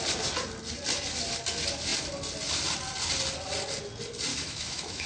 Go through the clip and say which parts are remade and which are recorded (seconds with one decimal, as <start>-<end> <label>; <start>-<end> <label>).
0.0-4.3 recorded; 4.3-5.1 remade